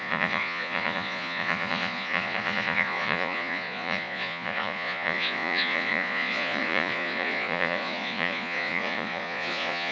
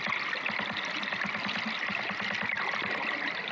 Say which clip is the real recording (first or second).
second